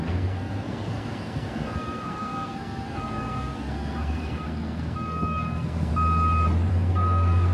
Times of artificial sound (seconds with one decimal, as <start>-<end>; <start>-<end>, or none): 0.0-5.9; 6.7-7.5